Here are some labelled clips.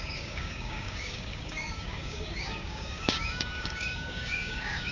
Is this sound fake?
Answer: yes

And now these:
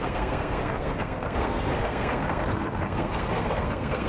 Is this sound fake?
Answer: yes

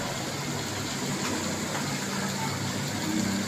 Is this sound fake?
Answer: no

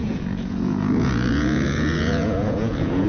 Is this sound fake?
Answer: yes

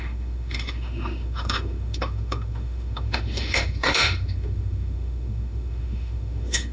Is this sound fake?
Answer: yes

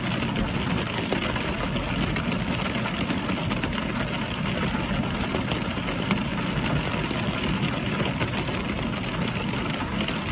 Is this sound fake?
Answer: no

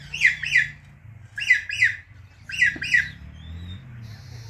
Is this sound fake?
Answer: no